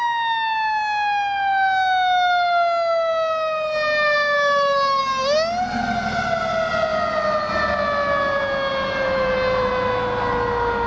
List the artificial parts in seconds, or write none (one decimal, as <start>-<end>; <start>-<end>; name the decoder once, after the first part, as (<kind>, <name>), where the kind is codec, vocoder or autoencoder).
8.7-9.7 (vocoder, BigVGAN v2)